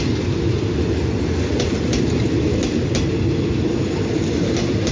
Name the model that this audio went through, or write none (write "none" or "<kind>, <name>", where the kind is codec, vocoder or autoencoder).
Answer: none